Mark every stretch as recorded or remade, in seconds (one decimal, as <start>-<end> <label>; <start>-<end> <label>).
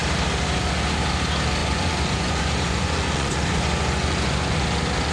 0.0-1.6 recorded; 1.6-4.6 remade; 4.6-5.1 recorded